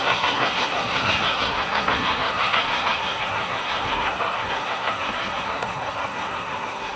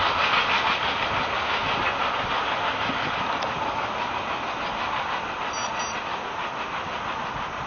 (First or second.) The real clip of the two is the second